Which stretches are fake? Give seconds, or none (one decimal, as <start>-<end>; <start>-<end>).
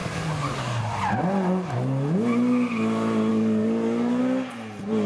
0.0-0.8; 3.3-4.2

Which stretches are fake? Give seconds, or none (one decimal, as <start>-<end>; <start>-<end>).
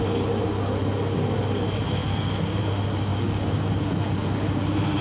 2.0-2.6; 3.1-3.7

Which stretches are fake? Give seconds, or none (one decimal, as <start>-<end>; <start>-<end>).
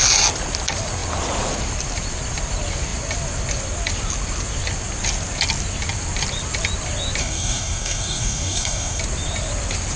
7.2-9.0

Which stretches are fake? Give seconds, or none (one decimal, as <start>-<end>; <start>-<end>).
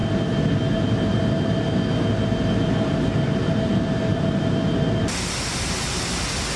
none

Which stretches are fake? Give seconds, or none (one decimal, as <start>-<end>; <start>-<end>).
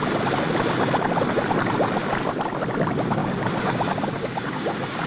3.2-5.1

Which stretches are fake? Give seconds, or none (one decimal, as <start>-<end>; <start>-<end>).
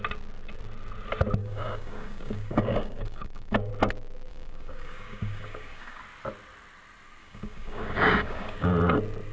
1.4-3.7; 4.3-6.0; 7.2-8.7